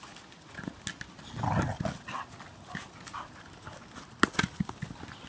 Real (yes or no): yes